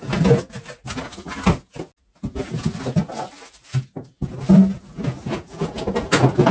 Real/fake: real